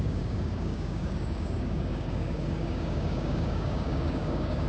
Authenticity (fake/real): fake